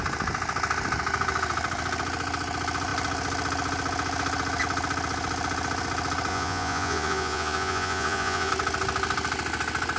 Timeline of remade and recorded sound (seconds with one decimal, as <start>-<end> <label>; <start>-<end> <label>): 0.0-6.3 recorded; 6.3-8.5 remade; 8.5-10.0 recorded